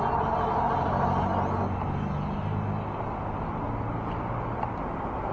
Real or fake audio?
real